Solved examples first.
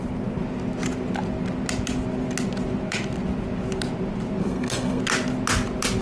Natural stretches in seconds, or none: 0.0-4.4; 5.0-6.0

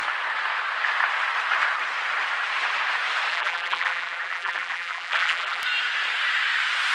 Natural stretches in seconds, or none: 0.0-3.3; 5.6-6.9

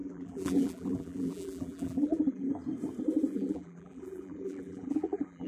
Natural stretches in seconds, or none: 2.5-3.3

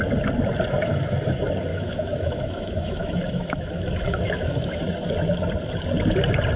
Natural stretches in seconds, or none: 0.0-1.7; 4.8-6.6